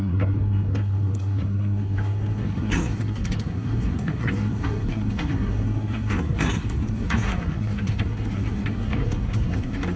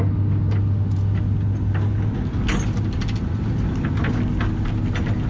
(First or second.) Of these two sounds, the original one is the second